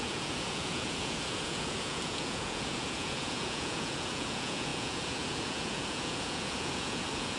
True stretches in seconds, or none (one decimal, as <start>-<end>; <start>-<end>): none